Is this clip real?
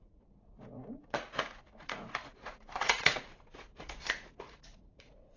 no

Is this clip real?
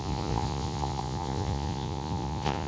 no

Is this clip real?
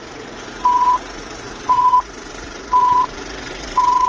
no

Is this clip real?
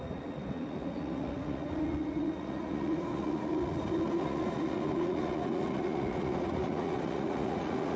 no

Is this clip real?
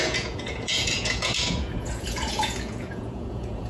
no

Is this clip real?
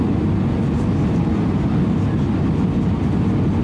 yes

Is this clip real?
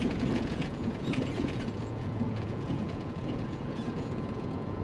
no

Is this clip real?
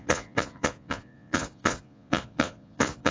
no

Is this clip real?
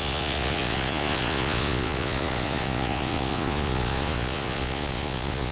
no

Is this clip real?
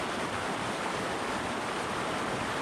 yes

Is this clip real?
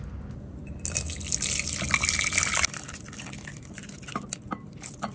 yes